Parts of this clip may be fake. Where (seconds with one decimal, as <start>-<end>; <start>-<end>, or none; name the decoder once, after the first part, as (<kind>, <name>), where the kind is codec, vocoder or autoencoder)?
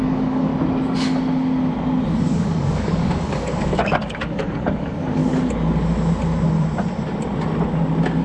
0.0-0.5 (codec, DAC); 2.2-5.2